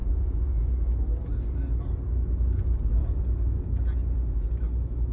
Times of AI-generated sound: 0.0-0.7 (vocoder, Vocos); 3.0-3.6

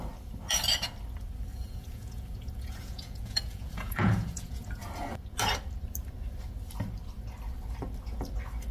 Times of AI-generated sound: 1.5-4.8 (vocoder, Vocos)

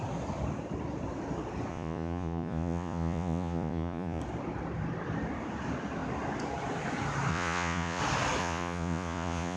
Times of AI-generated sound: 1.7-4.2 (vocoder, Vocos); 7.3-8.0; 8.4-9.6

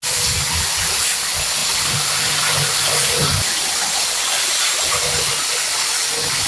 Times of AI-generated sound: none

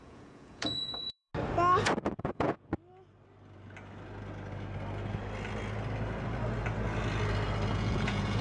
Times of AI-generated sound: 0.0-1.3 (vocoder, Vocos); 2.2-2.7; 7.7-8.4